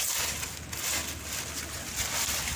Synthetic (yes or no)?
no